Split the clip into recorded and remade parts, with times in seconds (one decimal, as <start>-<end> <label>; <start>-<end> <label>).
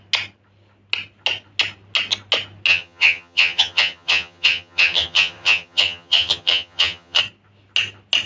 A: 0.0-2.7 recorded; 2.7-7.2 remade; 7.2-8.3 recorded